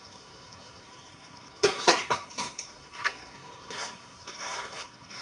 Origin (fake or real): fake